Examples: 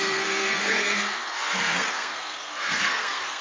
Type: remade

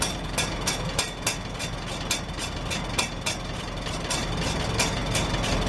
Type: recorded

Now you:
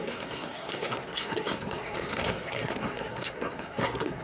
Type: remade